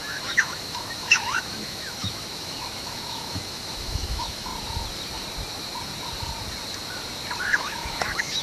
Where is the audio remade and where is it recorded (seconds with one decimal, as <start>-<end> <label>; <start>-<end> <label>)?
0.0-4.5 remade; 4.5-7.4 recorded; 7.4-8.4 remade